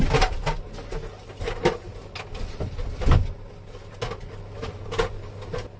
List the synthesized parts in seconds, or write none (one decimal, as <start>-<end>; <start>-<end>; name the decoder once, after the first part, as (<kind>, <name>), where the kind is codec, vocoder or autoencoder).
none